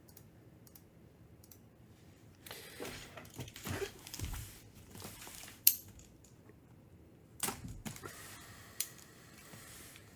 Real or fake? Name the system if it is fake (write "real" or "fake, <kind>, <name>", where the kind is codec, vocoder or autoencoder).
fake, vocoder, BigVGAN v2